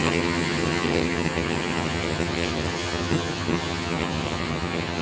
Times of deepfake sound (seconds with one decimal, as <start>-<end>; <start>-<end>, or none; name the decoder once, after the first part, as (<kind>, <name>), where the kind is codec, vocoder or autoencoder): 0.0-5.0 (vocoder, HiFi-GAN)